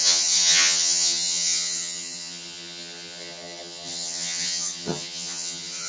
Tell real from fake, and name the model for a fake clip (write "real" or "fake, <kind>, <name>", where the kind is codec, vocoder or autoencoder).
fake, vocoder, HiFi-GAN